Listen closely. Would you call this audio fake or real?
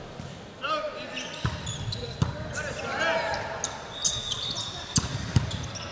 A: real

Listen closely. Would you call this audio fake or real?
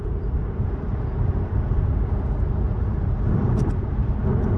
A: real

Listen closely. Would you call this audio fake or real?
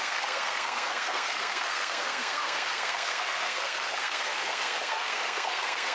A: fake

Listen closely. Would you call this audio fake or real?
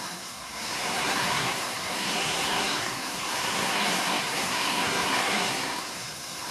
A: fake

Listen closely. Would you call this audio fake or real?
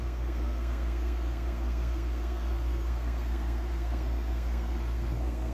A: fake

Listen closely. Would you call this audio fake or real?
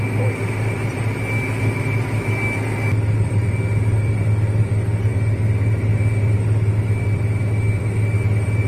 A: real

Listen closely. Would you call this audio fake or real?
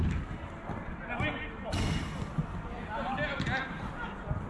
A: real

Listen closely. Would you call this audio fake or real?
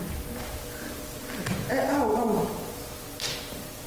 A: real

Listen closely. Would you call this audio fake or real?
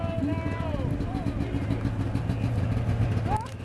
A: real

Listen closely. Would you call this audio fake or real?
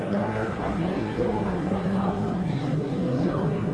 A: fake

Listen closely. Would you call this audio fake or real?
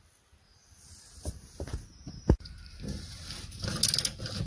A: real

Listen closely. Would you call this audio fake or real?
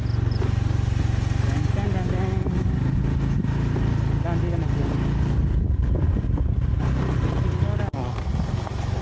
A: real